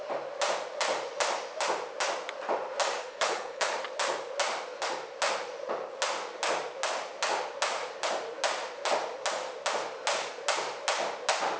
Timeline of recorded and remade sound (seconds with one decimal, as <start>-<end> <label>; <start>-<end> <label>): 0.0-3.0 recorded; 3.0-3.7 remade; 3.7-11.6 recorded